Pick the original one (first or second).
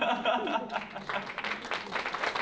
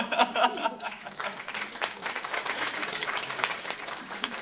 first